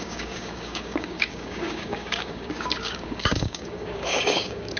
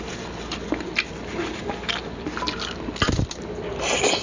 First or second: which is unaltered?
second